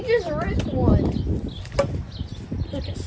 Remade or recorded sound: recorded